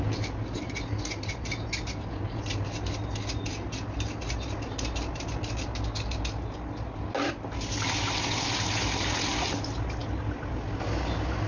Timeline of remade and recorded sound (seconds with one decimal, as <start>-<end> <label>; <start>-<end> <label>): 0.0-11.5 recorded